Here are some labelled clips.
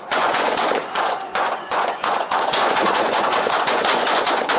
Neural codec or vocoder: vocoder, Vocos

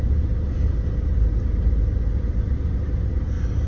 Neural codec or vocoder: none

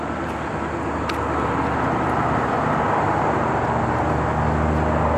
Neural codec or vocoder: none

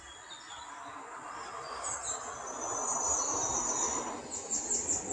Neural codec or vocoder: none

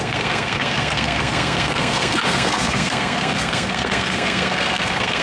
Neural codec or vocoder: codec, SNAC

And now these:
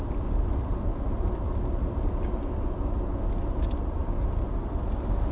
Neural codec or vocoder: none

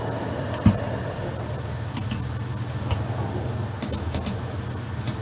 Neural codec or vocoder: none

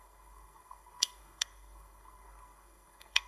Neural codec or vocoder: codec, SNAC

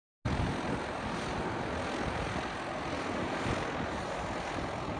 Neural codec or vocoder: none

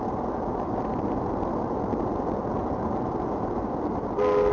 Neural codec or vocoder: none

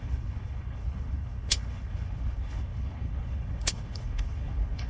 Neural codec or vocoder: codec, HILCodec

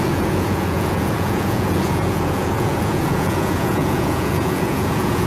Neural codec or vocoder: vocoder, Vocos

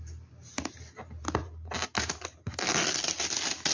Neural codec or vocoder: none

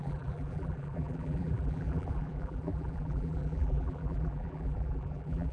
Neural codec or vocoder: vocoder, BigVGAN v2